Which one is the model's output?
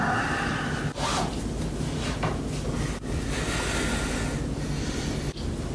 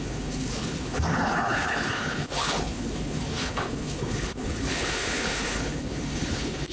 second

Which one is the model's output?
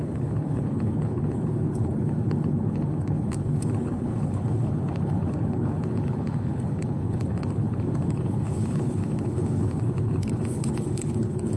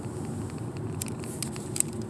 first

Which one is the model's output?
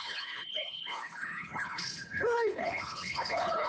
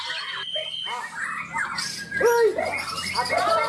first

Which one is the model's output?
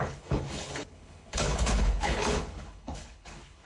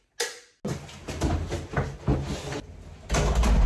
first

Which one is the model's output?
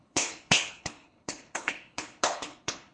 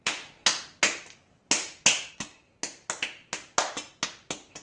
first